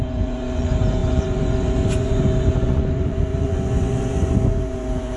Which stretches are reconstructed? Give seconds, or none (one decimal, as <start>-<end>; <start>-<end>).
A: 0.0-5.2